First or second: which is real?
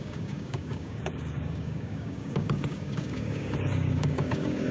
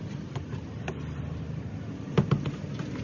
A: second